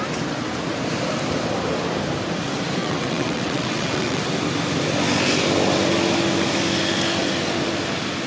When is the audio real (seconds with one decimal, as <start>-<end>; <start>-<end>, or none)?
0.0-2.8; 4.2-8.3